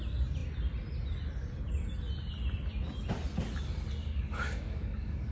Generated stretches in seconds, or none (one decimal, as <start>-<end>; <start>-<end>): 4.0-5.3